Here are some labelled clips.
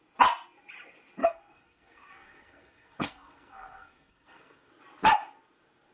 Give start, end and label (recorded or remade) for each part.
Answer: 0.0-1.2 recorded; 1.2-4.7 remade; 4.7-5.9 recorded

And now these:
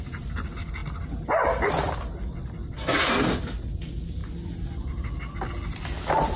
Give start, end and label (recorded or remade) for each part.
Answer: 0.0-6.4 recorded

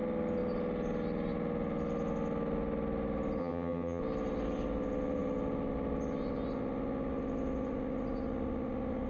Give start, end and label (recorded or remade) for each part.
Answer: 0.0-3.4 recorded; 3.4-4.0 remade; 4.0-9.1 recorded